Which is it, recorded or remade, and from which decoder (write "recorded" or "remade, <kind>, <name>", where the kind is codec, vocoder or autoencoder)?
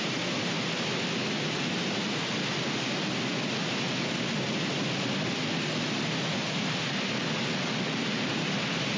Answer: recorded